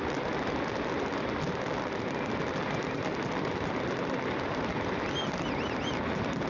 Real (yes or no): yes